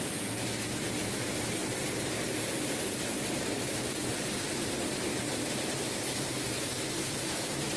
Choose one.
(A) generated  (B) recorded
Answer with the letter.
A